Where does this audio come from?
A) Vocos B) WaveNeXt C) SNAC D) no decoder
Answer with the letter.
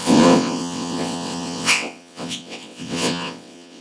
B